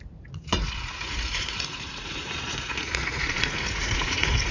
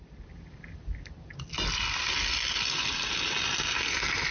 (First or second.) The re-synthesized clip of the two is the first